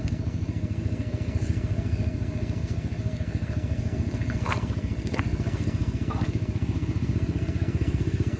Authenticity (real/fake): fake